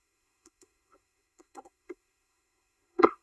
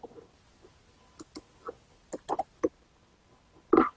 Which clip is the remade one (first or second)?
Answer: first